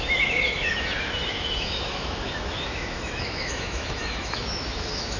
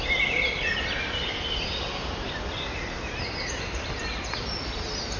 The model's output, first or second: first